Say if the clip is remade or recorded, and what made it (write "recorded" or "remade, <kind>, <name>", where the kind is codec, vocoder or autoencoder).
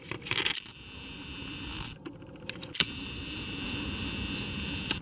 recorded